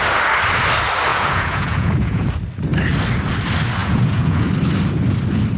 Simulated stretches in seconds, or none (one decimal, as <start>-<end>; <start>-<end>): 1.1-2.3; 3.8-4.5